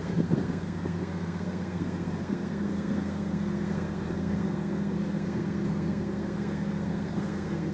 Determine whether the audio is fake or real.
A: fake